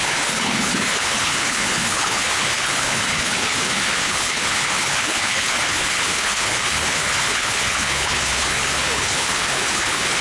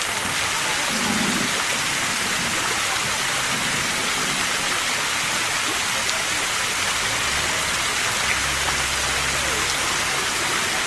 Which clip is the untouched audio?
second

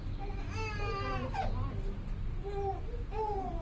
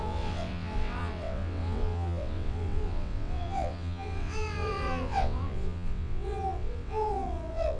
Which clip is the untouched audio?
first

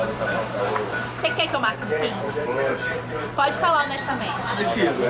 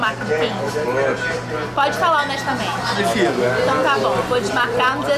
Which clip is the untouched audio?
second